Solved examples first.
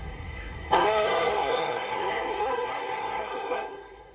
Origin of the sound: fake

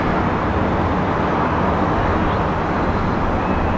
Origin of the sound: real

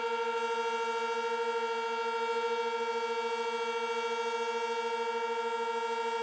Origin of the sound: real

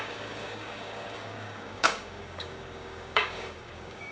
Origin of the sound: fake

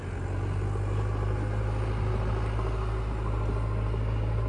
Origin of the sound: real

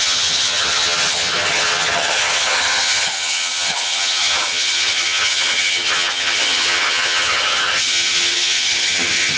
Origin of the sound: fake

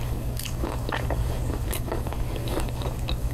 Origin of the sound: fake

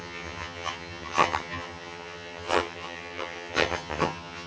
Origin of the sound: fake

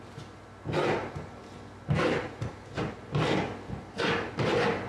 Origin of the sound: real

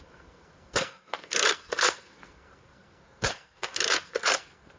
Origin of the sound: fake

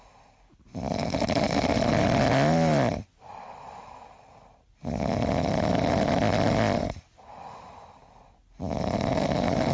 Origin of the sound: real